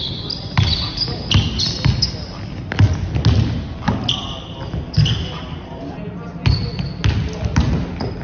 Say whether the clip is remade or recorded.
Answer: recorded